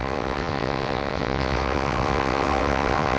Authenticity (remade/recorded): remade